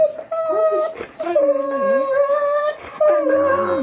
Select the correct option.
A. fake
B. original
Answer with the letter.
B